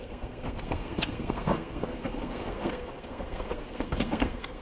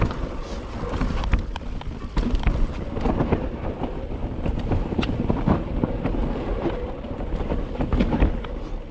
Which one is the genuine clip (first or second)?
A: second